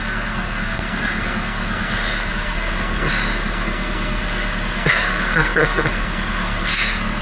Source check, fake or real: fake